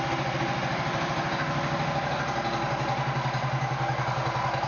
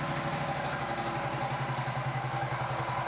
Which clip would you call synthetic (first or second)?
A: first